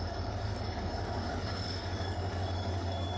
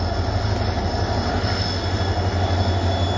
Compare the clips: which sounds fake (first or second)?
first